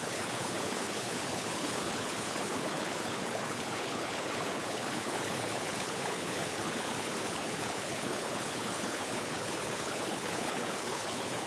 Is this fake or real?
fake